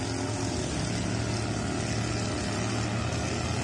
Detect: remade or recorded recorded